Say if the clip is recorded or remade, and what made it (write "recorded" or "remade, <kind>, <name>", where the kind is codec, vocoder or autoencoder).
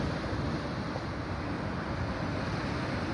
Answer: recorded